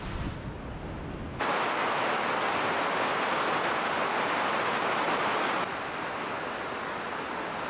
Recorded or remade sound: recorded